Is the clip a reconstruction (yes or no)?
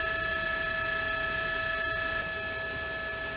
no